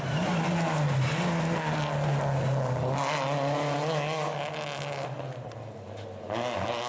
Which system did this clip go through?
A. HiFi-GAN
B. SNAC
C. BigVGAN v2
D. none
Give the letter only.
D